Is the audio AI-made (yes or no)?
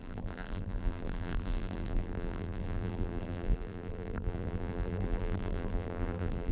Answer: yes